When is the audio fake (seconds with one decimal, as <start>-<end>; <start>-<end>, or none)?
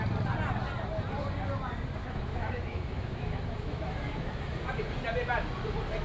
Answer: 2.0-4.8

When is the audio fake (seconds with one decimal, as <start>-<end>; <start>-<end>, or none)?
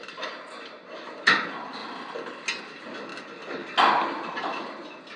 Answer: none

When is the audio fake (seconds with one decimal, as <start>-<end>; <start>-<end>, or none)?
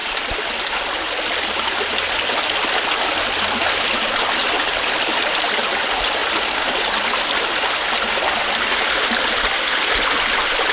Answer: none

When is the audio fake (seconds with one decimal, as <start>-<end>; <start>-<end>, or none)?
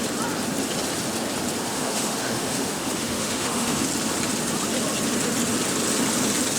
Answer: 1.7-3.8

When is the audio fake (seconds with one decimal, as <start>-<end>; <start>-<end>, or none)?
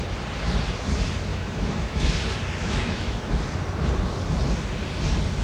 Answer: 1.3-2.1; 2.6-3.3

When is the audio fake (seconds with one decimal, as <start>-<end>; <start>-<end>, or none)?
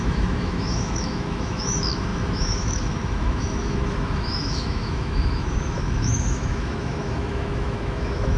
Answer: 0.0-8.4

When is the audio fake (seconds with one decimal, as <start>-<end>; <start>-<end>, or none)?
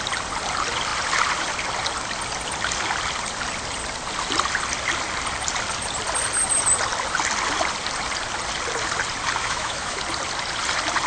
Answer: 9.4-10.0